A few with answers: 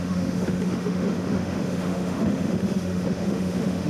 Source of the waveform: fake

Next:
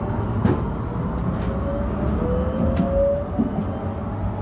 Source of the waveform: real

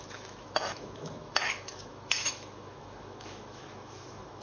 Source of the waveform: fake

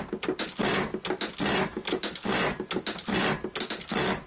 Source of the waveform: real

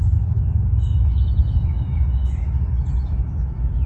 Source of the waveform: fake